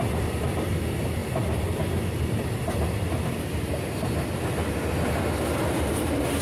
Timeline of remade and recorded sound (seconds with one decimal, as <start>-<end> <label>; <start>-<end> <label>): 0.0-6.4 recorded